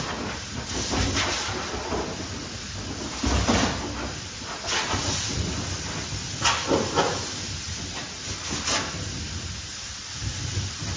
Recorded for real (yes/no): yes